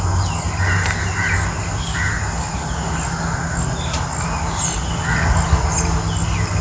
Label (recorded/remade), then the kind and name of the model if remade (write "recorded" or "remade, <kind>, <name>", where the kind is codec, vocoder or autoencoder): recorded